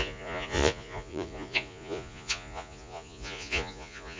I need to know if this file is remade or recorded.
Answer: remade